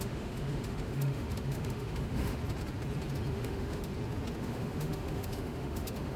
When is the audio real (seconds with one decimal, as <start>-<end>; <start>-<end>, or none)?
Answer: 2.4-3.3; 3.9-4.4